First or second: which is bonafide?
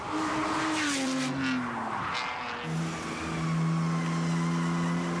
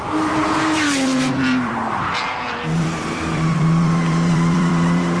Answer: first